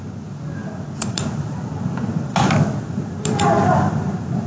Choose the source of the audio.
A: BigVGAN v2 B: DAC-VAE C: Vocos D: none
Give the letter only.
D